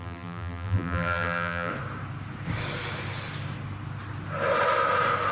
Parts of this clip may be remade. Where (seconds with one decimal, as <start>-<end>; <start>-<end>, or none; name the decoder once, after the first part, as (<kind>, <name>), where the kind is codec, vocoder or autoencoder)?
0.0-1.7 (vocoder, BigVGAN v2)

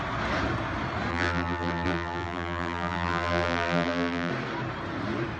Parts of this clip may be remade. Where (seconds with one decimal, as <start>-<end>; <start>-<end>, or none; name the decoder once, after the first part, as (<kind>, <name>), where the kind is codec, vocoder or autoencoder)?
1.1-4.3 (vocoder, BigVGAN v2)

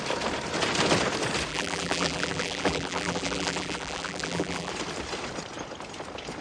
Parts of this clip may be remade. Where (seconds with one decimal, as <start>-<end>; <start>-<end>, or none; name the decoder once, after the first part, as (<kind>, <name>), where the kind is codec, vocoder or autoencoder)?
1.5-4.7 (vocoder, BigVGAN v2)